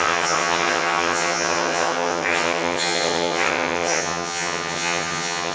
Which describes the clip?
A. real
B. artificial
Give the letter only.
B